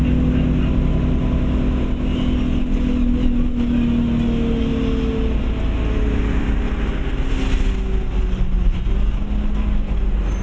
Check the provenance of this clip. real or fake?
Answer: real